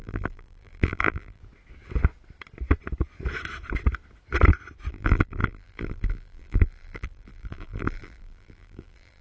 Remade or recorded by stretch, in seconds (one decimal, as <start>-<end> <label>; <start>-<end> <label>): 0.0-1.4 remade; 1.4-4.9 recorded; 4.9-9.2 remade